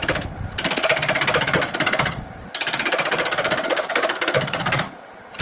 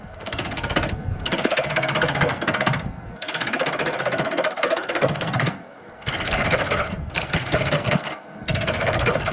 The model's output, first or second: second